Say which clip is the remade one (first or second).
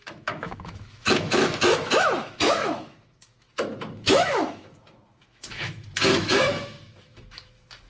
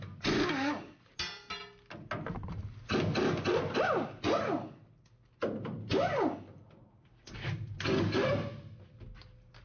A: first